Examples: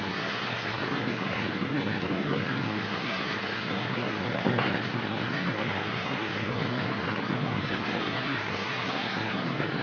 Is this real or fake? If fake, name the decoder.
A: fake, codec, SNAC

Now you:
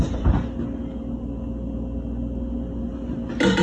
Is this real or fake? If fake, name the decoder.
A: real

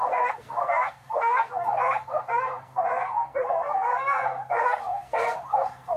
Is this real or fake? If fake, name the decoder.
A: fake, codec, SNAC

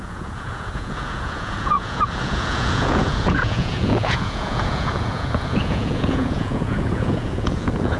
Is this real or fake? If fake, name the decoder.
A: fake, vocoder, Vocos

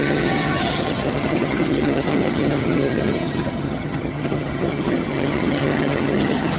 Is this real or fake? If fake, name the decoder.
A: fake, vocoder, HiFi-GAN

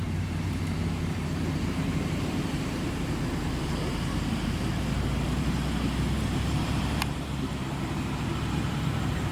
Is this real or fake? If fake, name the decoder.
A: fake, vocoder, BigVGAN v2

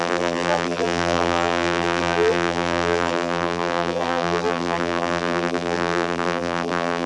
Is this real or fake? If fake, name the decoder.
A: fake, vocoder, BigVGAN v2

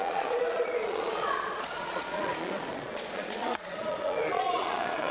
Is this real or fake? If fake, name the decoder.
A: fake, vocoder, Vocos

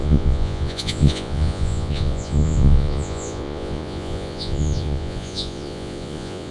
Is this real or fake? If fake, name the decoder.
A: fake, vocoder, Vocos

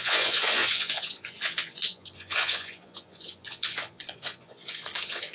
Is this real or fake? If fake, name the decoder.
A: fake, vocoder, Vocos